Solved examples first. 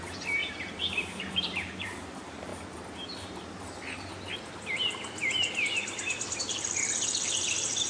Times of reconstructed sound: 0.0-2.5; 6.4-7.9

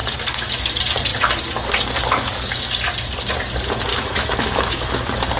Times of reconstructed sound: 3.9-4.9